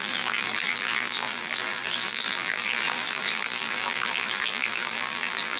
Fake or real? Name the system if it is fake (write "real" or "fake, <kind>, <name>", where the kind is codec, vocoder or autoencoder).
fake, vocoder, BigVGAN v2